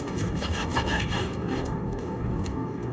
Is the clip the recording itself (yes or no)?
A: no